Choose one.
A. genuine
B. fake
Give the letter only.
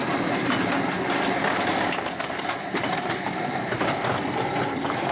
B